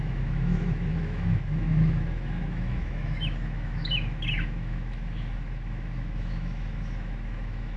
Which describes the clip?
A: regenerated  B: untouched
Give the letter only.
A